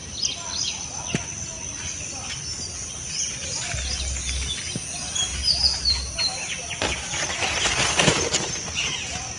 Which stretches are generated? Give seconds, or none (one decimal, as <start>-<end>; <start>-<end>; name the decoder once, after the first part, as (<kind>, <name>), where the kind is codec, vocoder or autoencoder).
none